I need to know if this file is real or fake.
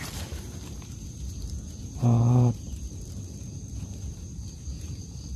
fake